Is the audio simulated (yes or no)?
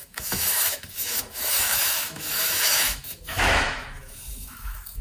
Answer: yes